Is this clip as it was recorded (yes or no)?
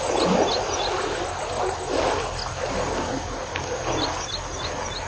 yes